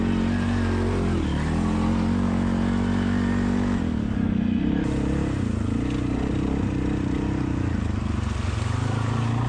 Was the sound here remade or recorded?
recorded